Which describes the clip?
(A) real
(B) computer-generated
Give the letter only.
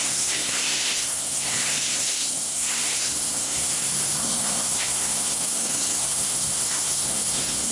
B